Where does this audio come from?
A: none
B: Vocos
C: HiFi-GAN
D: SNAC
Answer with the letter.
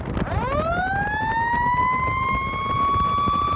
A